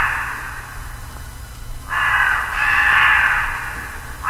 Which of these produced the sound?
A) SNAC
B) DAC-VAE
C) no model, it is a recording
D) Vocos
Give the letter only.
C